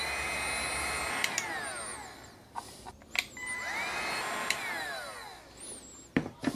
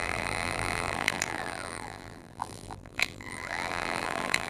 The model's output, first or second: second